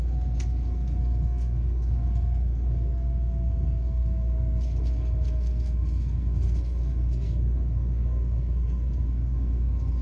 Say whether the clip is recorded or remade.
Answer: remade